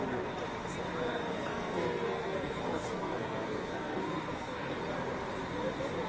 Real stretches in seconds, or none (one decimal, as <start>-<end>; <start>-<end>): 0.0-1.1; 4.8-6.1